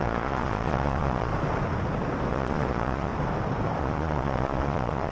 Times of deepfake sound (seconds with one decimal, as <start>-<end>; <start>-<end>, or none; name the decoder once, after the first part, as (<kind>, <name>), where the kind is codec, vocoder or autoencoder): 0.0-1.3 (vocoder, Vocos); 2.3-3.1; 3.8-5.1